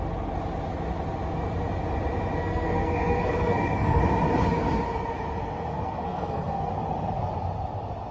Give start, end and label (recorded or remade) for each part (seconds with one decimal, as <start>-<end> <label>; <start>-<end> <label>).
0.0-2.4 recorded; 2.4-4.0 remade; 4.0-5.7 recorded; 5.7-6.7 remade; 6.7-8.1 recorded